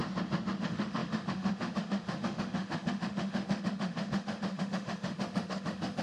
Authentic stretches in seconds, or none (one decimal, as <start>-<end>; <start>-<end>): 0.0-0.6